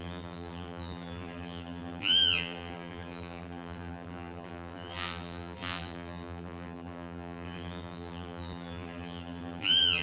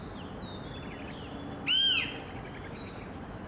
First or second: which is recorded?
second